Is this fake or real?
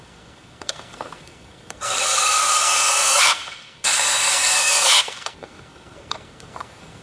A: fake